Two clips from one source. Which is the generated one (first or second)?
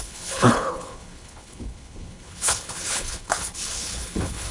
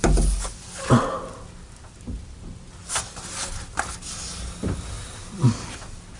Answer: first